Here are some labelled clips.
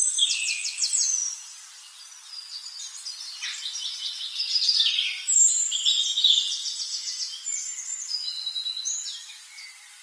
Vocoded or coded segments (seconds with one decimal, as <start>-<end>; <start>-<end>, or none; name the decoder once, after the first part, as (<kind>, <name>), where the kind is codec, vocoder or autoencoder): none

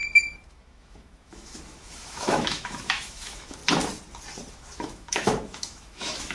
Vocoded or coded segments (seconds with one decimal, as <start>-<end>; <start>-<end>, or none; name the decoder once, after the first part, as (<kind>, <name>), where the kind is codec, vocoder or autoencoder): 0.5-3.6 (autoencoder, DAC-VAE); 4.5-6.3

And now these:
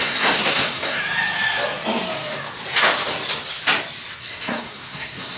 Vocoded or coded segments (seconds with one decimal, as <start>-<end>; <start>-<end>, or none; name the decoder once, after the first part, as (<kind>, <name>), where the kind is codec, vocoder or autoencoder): 0.0-1.0 (codec, SNAC); 4.2-5.4